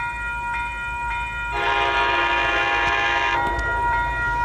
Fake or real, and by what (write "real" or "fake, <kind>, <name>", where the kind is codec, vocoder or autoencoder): real